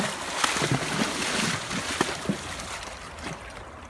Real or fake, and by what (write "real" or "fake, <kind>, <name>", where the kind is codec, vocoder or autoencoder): real